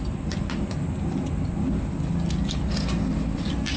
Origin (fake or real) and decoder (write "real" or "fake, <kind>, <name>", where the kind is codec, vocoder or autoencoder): real